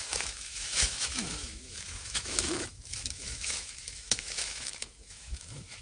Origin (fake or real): fake